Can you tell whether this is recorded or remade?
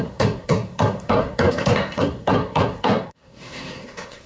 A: remade